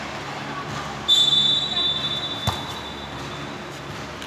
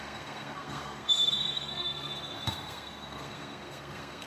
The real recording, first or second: first